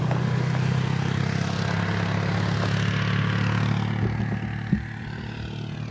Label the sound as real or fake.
real